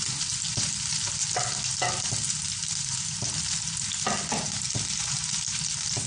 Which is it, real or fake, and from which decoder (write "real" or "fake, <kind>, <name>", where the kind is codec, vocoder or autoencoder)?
real